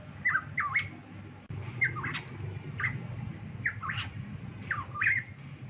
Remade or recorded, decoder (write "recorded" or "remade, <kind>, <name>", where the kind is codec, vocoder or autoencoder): recorded